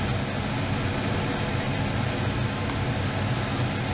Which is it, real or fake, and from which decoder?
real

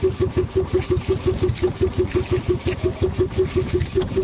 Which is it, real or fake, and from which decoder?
real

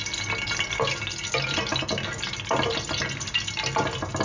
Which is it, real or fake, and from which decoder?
real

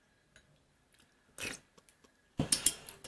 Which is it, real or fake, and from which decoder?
real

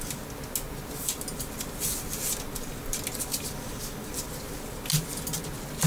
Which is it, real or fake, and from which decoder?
real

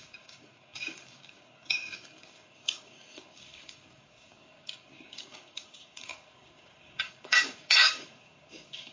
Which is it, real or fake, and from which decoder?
fake, codec, DAC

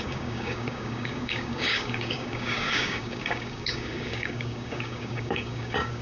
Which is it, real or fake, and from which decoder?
fake, codec, DAC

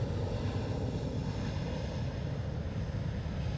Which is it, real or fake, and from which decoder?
real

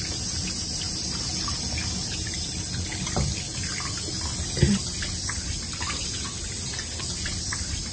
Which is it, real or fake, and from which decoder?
real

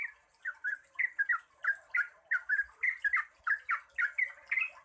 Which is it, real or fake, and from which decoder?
real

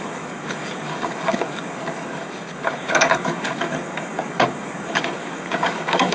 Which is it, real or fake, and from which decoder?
fake, codec, DAC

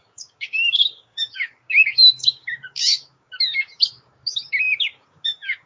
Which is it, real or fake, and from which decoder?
fake, codec, DAC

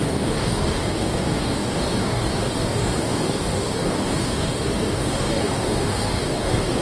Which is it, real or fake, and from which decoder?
fake, codec, DAC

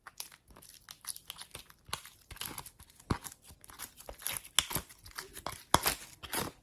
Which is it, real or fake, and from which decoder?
real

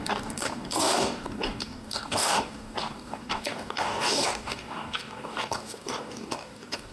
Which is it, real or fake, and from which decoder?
fake, codec, DAC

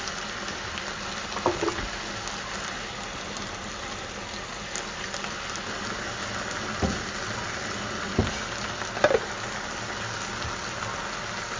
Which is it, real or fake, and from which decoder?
real